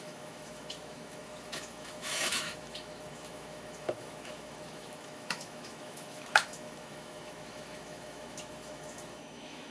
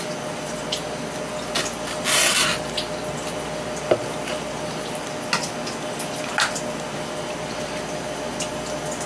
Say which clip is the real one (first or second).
second